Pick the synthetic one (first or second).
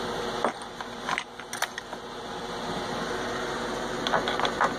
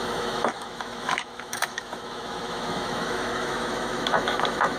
second